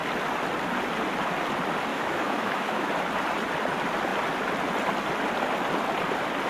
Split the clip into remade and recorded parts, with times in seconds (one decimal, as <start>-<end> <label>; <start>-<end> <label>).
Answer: 0.0-1.9 recorded; 1.9-2.9 remade; 2.9-6.5 recorded